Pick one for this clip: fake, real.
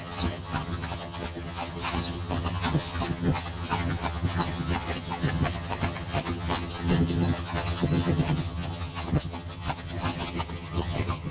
fake